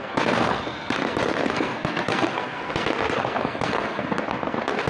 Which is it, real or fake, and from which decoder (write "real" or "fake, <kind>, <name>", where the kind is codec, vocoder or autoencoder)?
fake, codec, SNAC